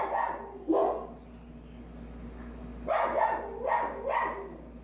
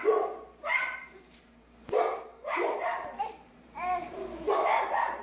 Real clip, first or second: first